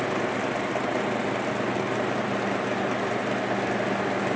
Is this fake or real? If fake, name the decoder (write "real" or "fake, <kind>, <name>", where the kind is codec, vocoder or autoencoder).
real